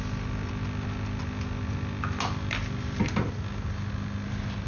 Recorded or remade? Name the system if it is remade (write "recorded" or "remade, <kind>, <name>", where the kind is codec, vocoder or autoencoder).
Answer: recorded